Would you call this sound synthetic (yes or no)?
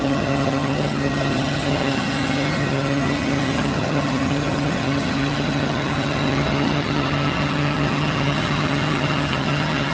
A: yes